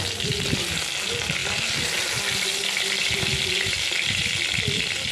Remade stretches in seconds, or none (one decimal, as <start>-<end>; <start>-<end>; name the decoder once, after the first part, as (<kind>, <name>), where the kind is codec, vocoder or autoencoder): none